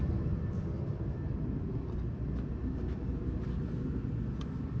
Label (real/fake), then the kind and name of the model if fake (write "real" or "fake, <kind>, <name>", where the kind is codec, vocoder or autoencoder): real